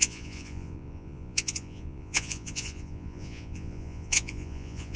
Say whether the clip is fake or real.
fake